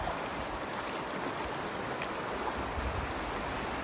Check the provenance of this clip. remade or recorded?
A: recorded